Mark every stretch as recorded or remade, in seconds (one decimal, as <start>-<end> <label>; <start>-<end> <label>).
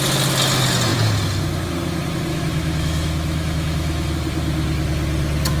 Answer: 0.0-2.3 recorded; 2.3-4.1 remade; 4.1-5.6 recorded